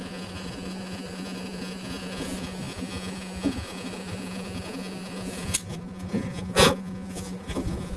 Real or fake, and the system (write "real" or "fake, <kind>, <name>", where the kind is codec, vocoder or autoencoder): fake, vocoder, Vocos